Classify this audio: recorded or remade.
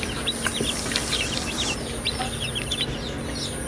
recorded